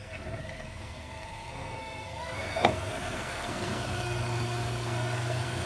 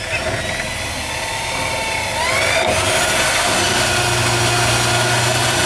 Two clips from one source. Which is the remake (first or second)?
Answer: first